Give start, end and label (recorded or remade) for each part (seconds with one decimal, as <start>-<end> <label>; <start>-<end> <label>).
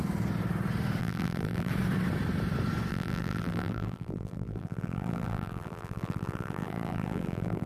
0.0-1.0 recorded; 1.0-1.7 remade; 1.7-2.9 recorded; 2.9-7.7 remade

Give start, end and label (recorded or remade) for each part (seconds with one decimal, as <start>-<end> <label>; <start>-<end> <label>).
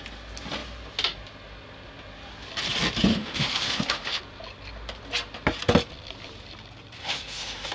0.0-3.1 recorded; 3.1-4.2 remade; 4.2-7.0 recorded; 7.0-7.7 remade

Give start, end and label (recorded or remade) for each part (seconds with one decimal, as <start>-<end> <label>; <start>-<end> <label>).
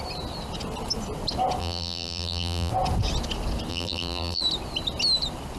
0.0-1.6 recorded; 1.6-2.7 remade; 2.7-3.7 recorded; 3.7-4.4 remade; 4.4-5.6 recorded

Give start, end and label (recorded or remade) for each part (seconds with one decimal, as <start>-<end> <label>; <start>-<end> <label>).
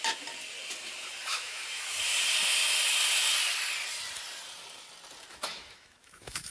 0.0-1.2 recorded; 1.2-2.0 remade; 2.0-5.3 recorded; 5.3-6.5 remade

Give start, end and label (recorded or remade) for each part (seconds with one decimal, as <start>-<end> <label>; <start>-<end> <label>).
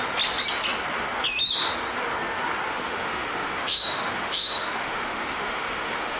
0.0-2.7 recorded; 2.7-6.2 remade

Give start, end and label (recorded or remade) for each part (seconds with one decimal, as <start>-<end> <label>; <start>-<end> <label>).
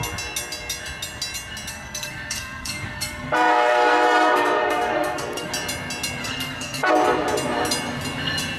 0.0-1.7 recorded; 1.7-5.5 remade; 5.5-6.2 recorded; 6.2-6.9 remade; 6.9-8.6 recorded